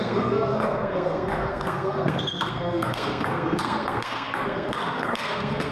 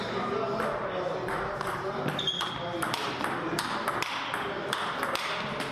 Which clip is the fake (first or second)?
first